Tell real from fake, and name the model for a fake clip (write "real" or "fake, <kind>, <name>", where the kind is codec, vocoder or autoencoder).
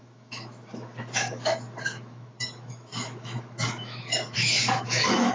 fake, autoencoder, DAC-VAE